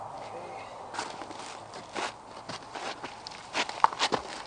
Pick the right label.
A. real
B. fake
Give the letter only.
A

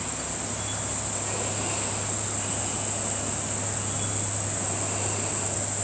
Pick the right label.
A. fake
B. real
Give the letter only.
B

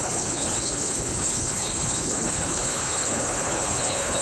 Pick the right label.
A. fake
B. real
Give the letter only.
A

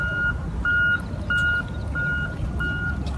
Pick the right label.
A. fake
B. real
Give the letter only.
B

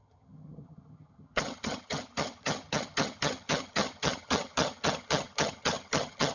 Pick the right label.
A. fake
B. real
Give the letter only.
A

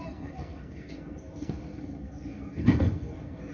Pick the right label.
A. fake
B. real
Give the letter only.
A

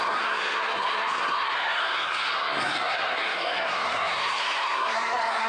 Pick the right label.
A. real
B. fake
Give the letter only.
B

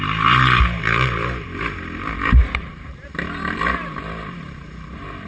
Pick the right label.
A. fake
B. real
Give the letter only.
A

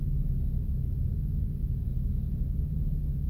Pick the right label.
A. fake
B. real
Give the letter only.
B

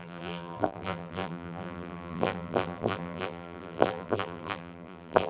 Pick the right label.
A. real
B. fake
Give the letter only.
B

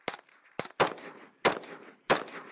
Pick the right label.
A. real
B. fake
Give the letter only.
A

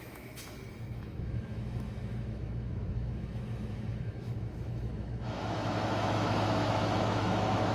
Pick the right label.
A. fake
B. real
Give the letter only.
A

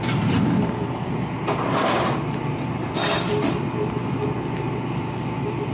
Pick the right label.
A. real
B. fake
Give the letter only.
A